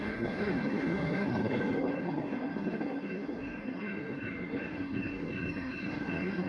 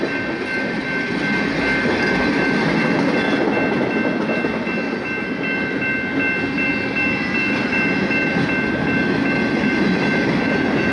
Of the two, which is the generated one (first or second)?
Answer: first